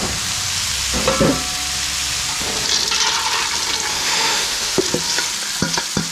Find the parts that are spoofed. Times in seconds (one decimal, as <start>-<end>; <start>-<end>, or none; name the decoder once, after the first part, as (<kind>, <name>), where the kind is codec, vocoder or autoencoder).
3.9-4.8 (autoencoder, DAC-VAE)